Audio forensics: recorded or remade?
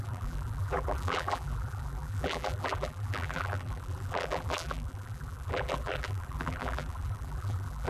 remade